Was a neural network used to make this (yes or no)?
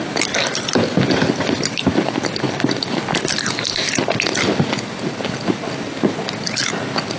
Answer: no